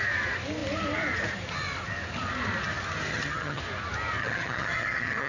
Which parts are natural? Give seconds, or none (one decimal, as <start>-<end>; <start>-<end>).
0.0-3.1; 3.6-4.2